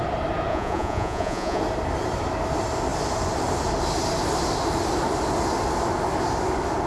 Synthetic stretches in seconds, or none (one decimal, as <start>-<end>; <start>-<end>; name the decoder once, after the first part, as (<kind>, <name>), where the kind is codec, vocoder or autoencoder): 0.5-1.6 (vocoder, Vocos)